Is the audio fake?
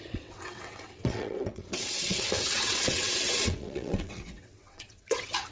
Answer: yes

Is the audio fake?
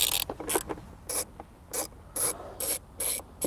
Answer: no